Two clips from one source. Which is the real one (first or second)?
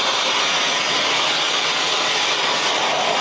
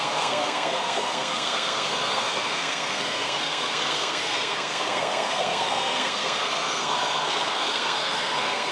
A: first